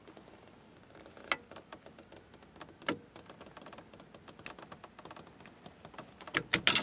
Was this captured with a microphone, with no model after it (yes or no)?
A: yes